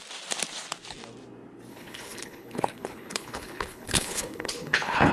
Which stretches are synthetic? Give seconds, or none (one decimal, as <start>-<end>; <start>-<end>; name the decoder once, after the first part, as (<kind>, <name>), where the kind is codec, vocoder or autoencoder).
1.7-5.1 (codec, HILCodec)

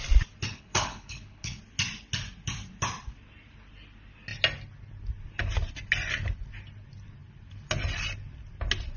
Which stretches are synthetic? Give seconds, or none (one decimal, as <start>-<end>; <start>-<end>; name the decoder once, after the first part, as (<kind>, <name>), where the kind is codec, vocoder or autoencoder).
0.5-1.6 (codec, HILCodec)

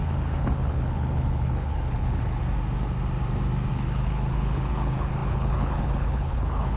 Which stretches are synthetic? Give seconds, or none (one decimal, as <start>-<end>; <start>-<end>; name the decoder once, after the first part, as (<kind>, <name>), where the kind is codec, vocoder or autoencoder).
0.0-2.4 (codec, HILCodec); 3.7-6.8

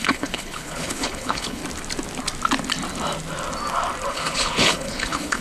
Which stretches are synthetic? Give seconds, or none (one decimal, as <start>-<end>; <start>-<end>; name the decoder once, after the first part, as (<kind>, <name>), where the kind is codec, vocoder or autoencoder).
0.0-1.6 (codec, HILCodec); 4.1-5.4

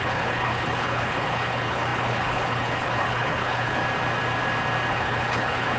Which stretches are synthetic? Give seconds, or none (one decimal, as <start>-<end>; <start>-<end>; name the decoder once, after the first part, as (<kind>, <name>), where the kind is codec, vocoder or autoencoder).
0.0-3.8 (codec, HILCodec); 4.9-5.8

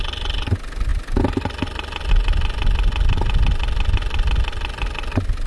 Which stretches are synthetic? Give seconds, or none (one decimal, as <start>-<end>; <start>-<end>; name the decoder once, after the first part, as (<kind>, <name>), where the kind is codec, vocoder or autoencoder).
none